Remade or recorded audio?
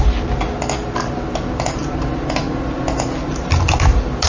recorded